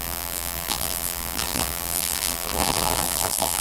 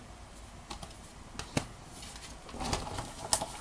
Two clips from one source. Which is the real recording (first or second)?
second